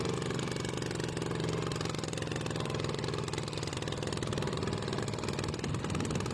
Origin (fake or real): real